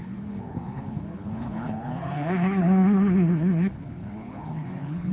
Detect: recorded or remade remade